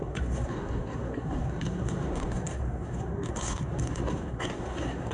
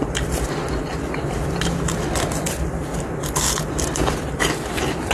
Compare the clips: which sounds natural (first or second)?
second